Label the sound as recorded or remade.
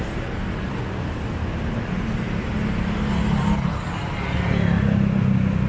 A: recorded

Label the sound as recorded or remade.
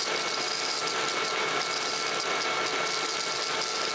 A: recorded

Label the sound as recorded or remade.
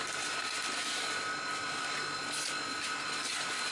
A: recorded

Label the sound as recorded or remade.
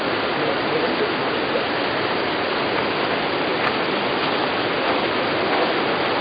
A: recorded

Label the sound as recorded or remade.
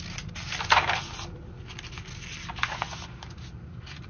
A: recorded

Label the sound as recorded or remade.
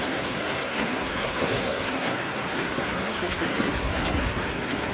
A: remade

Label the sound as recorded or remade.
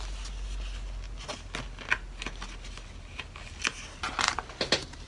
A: recorded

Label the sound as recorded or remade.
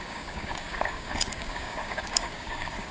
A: remade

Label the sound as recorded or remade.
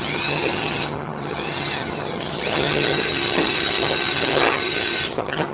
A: remade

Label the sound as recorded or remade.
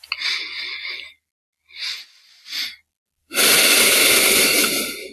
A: recorded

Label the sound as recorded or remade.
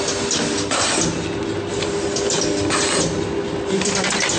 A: recorded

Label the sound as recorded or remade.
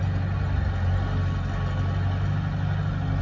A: recorded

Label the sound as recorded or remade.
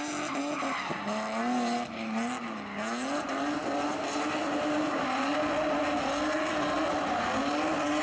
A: recorded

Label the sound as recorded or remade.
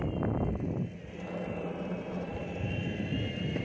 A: recorded